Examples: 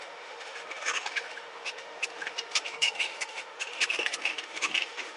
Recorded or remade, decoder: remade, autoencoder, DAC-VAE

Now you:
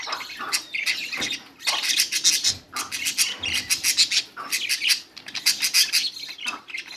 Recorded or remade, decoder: recorded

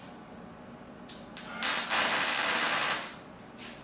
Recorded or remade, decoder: recorded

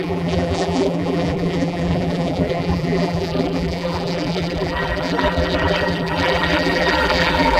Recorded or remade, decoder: remade, vocoder, BigVGAN v2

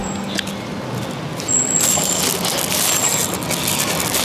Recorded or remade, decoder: recorded